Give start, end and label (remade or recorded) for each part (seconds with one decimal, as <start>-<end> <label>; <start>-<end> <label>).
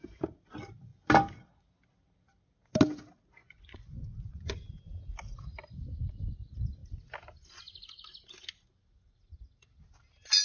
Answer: 0.0-3.4 recorded; 3.4-4.8 remade; 4.8-10.4 recorded